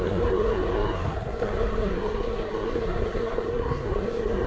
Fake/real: fake